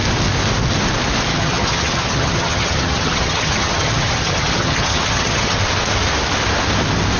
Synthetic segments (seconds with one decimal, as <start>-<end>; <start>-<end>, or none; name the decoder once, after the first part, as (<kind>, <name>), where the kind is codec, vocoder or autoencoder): 1.3-5.6 (vocoder, HiFi-GAN)